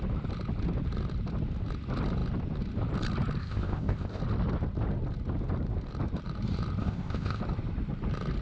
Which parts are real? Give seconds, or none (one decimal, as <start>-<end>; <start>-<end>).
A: 0.0-3.4; 4.2-6.8; 7.4-8.4